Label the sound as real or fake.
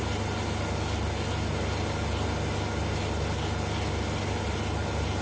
real